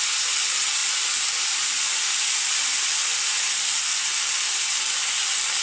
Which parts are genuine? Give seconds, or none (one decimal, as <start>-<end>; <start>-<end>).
0.0-5.6